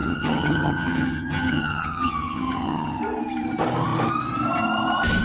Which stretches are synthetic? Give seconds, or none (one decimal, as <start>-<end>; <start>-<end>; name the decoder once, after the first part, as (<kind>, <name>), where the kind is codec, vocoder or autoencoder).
0.0-3.0 (vocoder, HiFi-GAN)